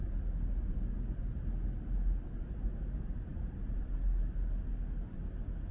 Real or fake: real